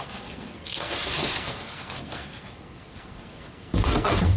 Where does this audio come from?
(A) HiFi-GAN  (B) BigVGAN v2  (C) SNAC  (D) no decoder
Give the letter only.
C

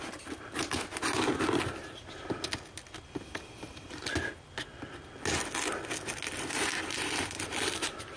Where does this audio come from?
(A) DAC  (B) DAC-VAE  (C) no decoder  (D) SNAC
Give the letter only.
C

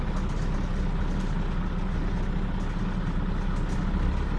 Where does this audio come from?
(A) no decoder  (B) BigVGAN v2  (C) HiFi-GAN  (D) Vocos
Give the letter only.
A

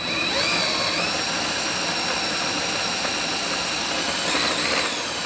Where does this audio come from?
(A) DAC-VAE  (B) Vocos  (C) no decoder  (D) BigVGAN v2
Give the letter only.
C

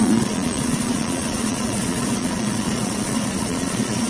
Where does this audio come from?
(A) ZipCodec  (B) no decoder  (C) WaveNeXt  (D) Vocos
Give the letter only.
D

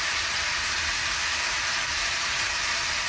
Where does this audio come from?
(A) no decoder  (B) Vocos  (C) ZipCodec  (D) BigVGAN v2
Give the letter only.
D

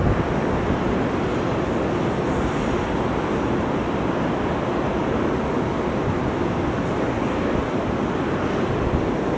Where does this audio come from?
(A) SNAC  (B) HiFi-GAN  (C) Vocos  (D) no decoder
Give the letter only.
D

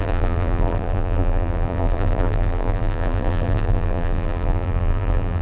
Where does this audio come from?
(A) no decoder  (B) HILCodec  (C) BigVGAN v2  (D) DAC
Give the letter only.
C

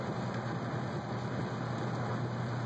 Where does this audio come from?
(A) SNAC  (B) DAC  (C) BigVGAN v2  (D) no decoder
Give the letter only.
D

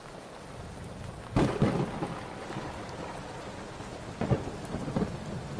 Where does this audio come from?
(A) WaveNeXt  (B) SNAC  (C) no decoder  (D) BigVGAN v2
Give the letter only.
C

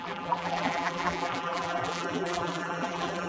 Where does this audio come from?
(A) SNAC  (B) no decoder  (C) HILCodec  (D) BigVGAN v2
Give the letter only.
D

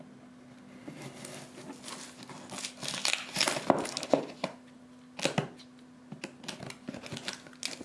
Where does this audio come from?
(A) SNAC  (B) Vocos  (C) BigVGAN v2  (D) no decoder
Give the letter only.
D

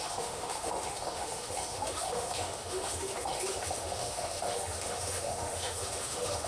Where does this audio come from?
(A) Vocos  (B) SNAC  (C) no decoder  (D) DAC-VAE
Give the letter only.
D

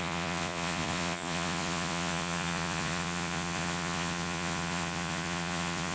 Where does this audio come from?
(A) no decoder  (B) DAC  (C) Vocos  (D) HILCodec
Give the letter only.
C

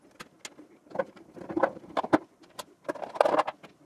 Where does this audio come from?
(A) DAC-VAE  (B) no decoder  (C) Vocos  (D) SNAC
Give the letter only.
B